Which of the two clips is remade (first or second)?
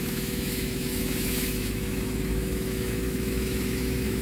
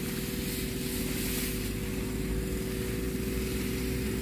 first